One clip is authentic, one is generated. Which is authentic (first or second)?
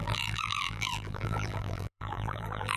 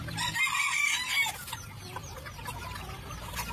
second